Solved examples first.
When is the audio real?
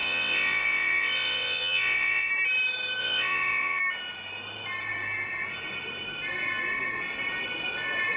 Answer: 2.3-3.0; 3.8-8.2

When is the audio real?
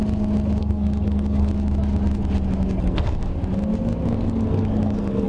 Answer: 0.0-0.6; 1.5-2.8; 3.3-4.1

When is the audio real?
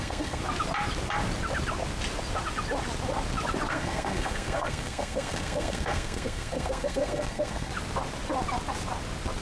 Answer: 0.4-3.7; 7.7-9.4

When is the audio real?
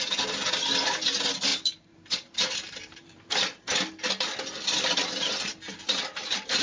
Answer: 0.0-1.5; 3.6-5.7